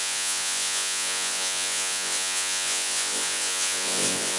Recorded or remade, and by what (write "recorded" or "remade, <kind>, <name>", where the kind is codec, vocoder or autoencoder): remade, vocoder, Vocos